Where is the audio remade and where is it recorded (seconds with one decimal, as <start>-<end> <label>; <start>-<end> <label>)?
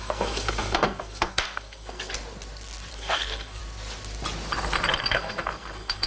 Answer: 0.0-2.1 remade; 2.1-2.9 recorded; 2.9-3.6 remade; 3.6-5.0 recorded; 5.0-6.1 remade